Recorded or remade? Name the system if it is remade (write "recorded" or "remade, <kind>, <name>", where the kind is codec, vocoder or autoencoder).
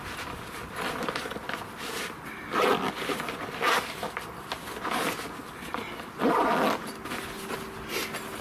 recorded